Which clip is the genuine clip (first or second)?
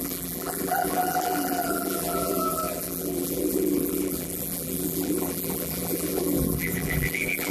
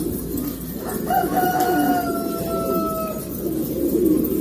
second